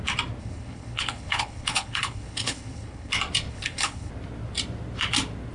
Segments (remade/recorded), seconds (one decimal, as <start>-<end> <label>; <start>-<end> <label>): 0.0-0.4 recorded; 0.4-3.1 remade; 3.1-3.5 recorded; 3.5-4.1 remade; 4.1-5.5 recorded